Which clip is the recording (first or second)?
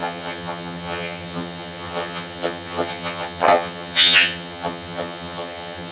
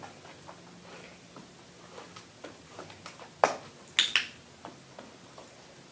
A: second